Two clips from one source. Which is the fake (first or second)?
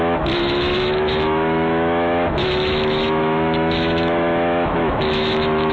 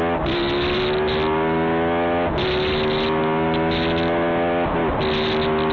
first